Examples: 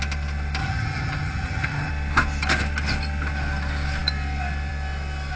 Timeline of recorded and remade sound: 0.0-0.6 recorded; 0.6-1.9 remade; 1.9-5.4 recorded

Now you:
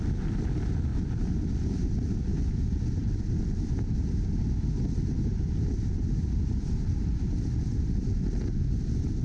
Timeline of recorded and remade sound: 0.0-9.2 recorded

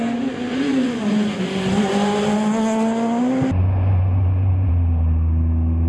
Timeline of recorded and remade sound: 0.0-0.5 recorded; 0.5-1.4 remade; 1.4-3.6 recorded; 3.6-4.7 remade; 4.7-5.9 recorded

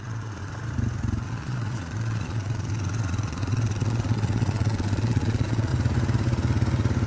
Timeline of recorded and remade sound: 0.0-0.6 remade; 0.6-1.2 recorded; 1.2-5.7 remade; 5.7-7.1 recorded

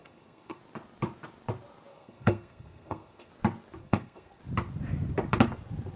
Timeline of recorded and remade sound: 0.0-0.6 remade; 0.6-1.9 recorded; 1.9-3.3 remade; 3.3-3.8 recorded; 3.8-4.4 remade; 4.4-6.0 recorded

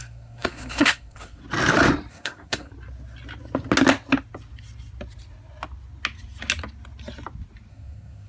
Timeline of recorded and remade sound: 0.0-1.4 remade; 1.4-2.1 recorded; 2.1-2.7 remade; 2.7-7.7 recorded; 7.7-8.3 remade

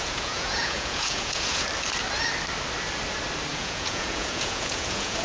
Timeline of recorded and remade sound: 0.0-1.6 remade; 1.6-3.5 recorded; 3.5-5.2 remade